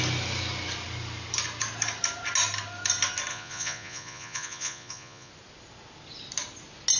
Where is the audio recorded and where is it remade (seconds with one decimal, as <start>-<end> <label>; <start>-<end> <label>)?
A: 0.0-3.3 recorded; 3.3-5.3 remade; 5.3-7.0 recorded